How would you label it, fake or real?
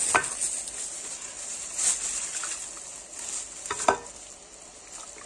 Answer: real